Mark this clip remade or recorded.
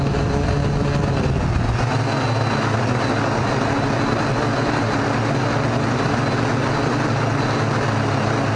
recorded